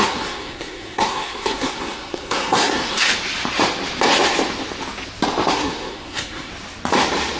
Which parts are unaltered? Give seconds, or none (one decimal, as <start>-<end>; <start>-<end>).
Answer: 3.1-5.5; 6.5-7.4